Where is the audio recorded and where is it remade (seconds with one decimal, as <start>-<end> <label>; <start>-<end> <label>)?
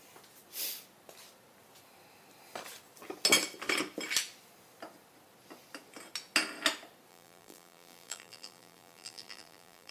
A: 0.0-7.1 recorded; 7.1-9.9 remade